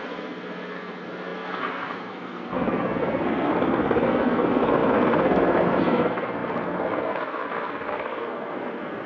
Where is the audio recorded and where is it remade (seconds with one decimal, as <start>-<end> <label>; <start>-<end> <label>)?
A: 0.0-9.1 remade